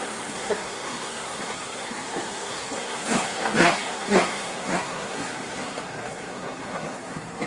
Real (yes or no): no